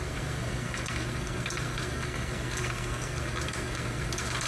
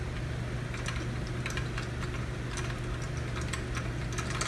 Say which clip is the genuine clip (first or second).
second